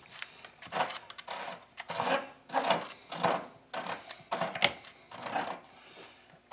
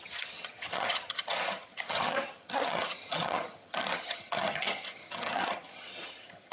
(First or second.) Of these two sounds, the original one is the first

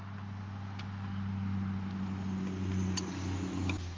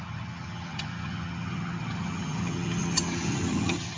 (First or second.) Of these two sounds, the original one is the first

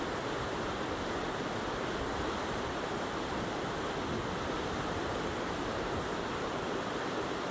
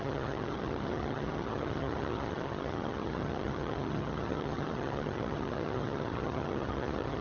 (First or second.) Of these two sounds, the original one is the first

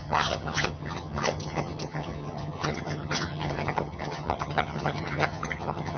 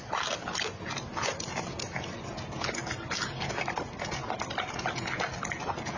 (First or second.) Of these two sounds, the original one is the second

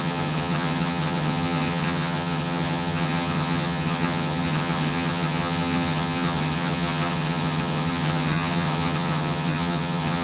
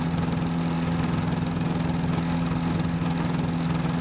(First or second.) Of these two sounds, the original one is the second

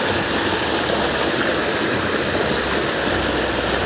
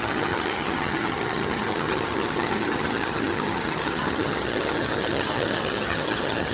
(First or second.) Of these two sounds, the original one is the first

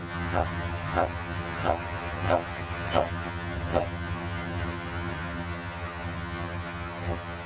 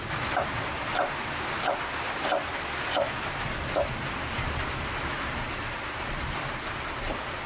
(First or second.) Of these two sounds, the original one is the second